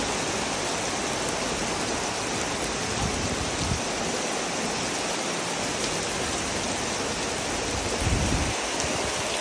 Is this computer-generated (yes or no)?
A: no